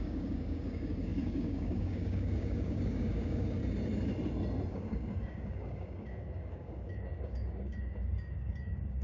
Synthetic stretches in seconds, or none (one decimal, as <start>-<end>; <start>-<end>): 0.0-3.6; 4.7-9.0